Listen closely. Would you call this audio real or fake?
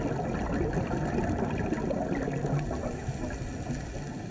real